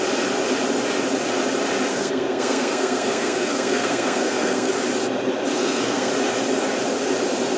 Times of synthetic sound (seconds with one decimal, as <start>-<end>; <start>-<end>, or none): 1.9-4.7; 5.5-6.1